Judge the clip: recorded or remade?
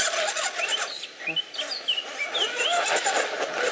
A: recorded